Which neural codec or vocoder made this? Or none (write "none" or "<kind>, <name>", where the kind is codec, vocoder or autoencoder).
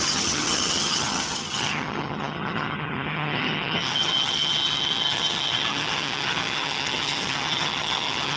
vocoder, HiFi-GAN